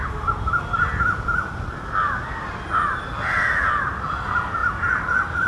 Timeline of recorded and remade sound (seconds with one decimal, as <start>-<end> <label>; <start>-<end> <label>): 0.0-5.5 recorded